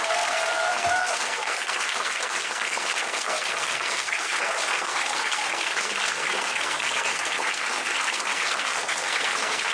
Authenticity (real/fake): fake